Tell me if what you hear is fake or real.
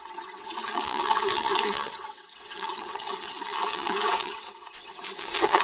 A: fake